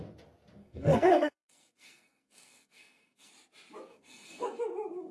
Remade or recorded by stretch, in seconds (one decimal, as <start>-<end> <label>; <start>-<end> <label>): 0.0-0.6 recorded; 0.6-3.3 remade; 3.3-3.9 recorded; 3.9-4.6 remade; 4.6-5.1 recorded